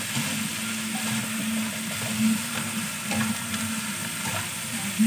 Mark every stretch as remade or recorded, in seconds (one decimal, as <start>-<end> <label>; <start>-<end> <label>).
0.0-5.1 recorded